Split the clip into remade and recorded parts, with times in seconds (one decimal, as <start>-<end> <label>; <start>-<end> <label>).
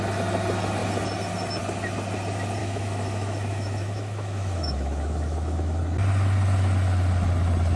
0.0-2.6 recorded; 2.6-5.8 remade; 5.8-7.8 recorded